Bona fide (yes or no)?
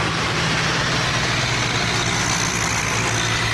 yes